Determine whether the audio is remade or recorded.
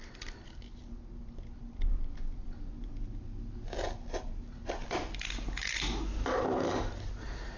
recorded